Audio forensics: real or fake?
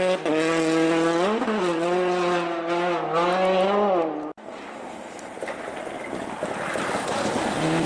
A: real